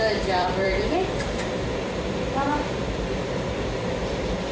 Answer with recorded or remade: remade